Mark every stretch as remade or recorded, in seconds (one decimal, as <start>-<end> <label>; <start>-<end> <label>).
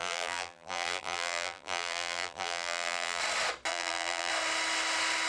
0.0-3.2 remade; 3.2-3.7 recorded; 3.7-4.3 remade; 4.3-5.3 recorded